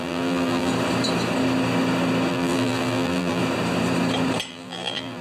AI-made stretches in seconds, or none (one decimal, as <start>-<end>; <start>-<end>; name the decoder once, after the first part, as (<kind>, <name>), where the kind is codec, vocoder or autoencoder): 0.0-0.7 (vocoder, BigVGAN v2); 2.3-3.4; 4.5-5.2